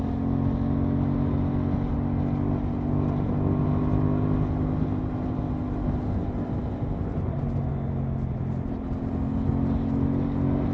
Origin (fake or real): real